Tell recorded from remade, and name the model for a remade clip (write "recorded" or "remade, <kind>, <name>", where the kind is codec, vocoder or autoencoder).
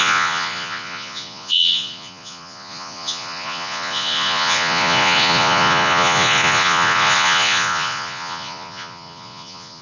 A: remade, vocoder, Vocos